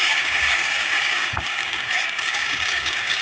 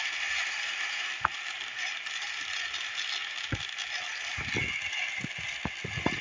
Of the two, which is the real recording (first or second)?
second